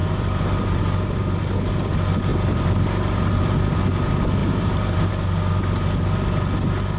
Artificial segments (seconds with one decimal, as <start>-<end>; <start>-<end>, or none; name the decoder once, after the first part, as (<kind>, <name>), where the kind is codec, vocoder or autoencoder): 0.0-0.8 (vocoder, BigVGAN v2); 2.3-3.6; 4.4-5.1